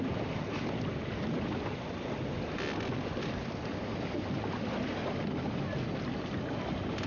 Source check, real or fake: real